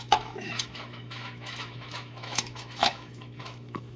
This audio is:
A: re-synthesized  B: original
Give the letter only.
A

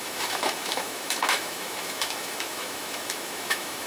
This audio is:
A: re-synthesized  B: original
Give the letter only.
A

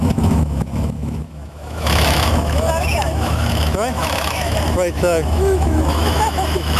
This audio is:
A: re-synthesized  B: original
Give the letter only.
A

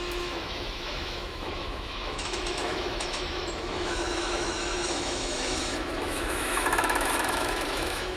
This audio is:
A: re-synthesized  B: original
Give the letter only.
A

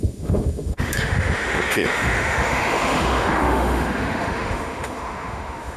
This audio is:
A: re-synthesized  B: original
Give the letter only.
A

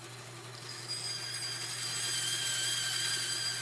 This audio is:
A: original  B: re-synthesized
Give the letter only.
A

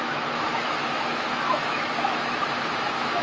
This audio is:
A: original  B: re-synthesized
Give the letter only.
B